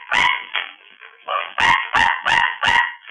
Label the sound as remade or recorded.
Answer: remade